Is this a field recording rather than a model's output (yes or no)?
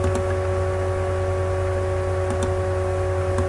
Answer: yes